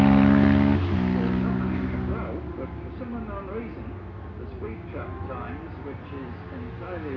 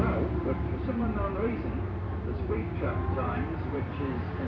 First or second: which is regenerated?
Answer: second